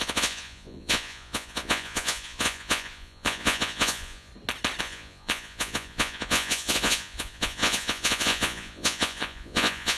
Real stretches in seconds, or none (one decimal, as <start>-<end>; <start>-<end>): 4.3-4.8